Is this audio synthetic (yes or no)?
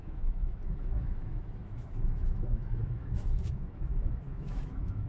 yes